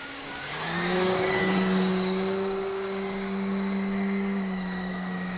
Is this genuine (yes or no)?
no